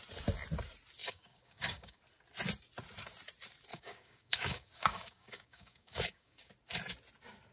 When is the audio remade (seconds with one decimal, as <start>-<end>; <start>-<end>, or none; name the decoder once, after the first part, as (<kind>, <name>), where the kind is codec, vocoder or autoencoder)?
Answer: 1.0-2.0 (codec, DAC); 3.7-6.5